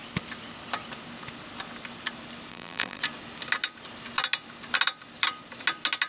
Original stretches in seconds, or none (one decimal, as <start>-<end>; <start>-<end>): 0.0-2.5; 3.0-6.1